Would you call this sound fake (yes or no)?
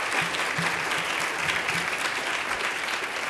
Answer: no